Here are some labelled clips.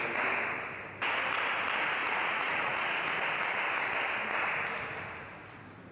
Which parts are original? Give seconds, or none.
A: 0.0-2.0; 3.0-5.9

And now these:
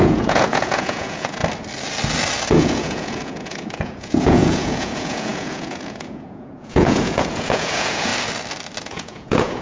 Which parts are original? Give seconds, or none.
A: 1.4-2.5; 8.1-8.8

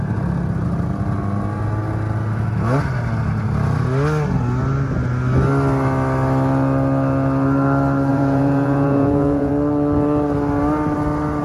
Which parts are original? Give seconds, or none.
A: 0.0-8.1; 9.5-11.4

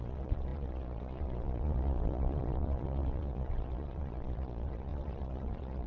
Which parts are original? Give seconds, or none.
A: none

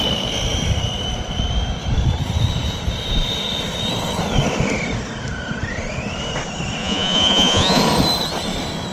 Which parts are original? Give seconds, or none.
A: 0.0-6.8; 7.8-8.9

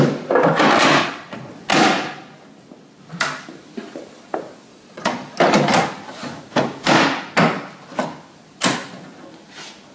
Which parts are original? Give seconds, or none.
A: 0.0-1.0; 1.5-4.7; 5.3-9.9

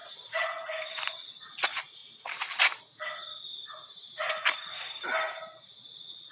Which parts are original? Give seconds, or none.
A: 0.0-6.3

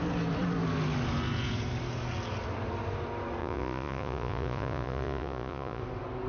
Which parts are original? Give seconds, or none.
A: 0.0-3.4; 5.8-6.3